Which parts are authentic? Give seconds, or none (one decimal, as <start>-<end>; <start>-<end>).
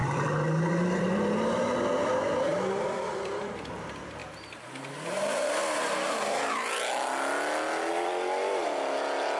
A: 4.2-4.9; 5.6-7.9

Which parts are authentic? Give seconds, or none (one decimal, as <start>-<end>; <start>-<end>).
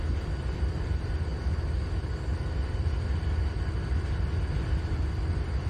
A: 0.0-5.7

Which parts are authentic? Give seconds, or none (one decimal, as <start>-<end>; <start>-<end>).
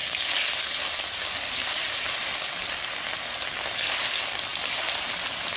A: 0.0-1.0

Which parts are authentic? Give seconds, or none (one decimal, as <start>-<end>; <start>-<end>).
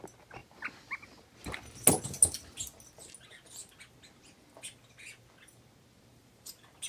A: 0.0-6.1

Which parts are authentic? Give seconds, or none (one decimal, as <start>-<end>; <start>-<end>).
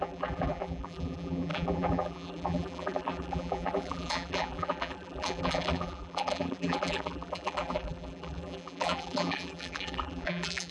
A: none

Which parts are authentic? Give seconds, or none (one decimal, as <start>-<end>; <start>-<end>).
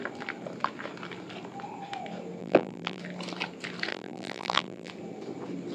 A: 0.0-2.4; 3.0-3.9; 4.9-5.7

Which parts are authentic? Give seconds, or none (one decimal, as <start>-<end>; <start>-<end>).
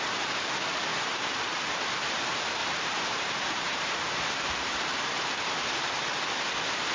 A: 0.0-0.9; 1.6-2.6; 5.0-6.9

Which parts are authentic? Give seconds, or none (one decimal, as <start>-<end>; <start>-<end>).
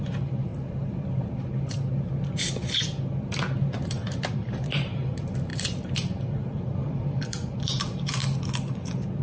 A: 0.5-3.6; 8.2-9.2